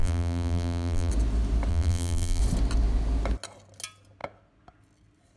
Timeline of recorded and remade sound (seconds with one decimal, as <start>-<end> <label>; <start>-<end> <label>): 0.0-1.1 remade; 1.1-1.7 recorded; 1.7-2.4 remade; 2.4-5.4 recorded